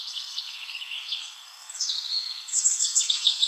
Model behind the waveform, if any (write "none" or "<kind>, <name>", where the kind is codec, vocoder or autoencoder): codec, SNAC